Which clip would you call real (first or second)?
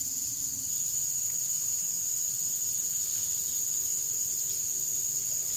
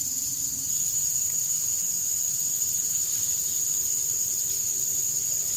first